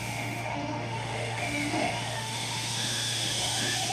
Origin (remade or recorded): remade